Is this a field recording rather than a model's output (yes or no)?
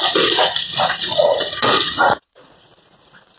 no